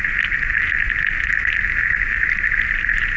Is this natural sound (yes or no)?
yes